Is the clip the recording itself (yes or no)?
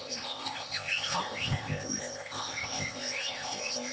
no